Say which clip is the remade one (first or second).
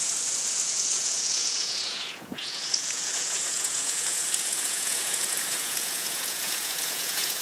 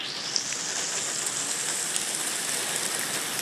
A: first